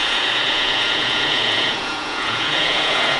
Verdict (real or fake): fake